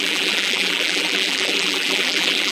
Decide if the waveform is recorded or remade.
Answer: remade